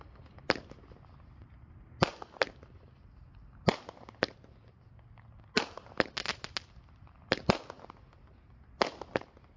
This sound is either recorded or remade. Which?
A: recorded